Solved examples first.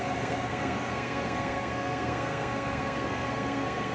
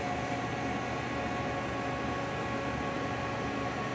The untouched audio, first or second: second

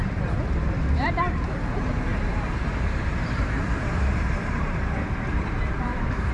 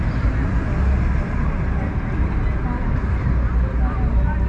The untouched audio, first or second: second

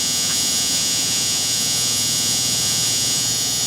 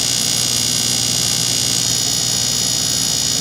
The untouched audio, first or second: second